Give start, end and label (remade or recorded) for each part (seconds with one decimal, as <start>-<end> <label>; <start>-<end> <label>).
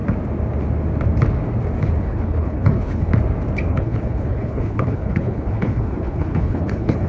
0.0-2.0 recorded; 2.0-3.1 remade; 3.1-3.7 recorded; 3.7-7.1 remade